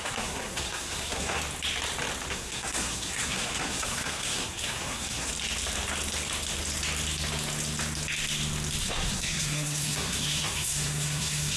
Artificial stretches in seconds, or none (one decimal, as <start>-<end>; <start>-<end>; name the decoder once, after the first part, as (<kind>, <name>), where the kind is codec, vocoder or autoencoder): 0.0-1.4 (codec, SNAC); 2.3-5.3; 8.8-11.6

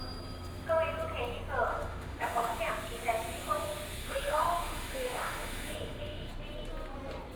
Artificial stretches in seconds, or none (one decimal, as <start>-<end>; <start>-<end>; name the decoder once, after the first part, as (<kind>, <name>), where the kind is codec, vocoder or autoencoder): 1.7-2.6 (autoencoder, DAC-VAE); 4.0-6.3

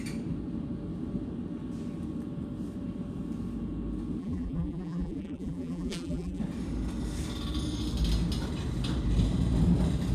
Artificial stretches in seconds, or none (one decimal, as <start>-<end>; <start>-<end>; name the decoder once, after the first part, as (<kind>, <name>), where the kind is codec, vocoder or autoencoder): 4.2-6.4 (vocoder, BigVGAN v2)

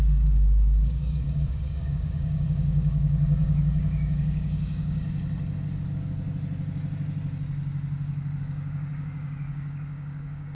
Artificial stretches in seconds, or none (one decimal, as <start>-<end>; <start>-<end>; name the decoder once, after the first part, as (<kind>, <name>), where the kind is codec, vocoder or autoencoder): 0.0-5.0 (codec, DAC); 8.4-10.5

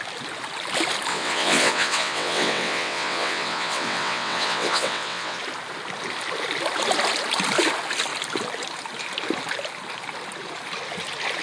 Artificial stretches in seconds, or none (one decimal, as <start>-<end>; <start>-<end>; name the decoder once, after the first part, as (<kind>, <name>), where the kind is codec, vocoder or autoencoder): 1.1-5.4 (vocoder, WaveNeXt)